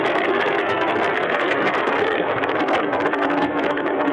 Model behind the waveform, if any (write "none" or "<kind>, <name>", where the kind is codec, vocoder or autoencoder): codec, SNAC